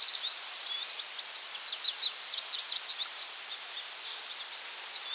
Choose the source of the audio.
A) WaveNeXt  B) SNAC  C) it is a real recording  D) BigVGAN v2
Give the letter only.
C